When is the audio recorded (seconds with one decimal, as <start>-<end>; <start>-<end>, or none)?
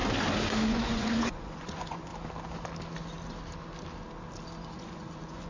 0.0-0.7; 2.1-4.7